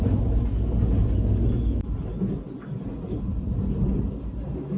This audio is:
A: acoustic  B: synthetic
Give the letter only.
A